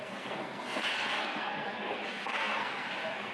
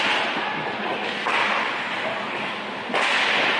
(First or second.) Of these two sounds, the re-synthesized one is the first